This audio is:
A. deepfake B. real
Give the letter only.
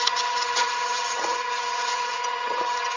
A